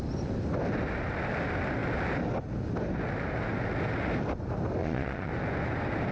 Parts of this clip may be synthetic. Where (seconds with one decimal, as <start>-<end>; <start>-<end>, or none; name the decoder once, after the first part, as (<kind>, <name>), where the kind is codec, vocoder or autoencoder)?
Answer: 4.8-5.3 (vocoder, Vocos)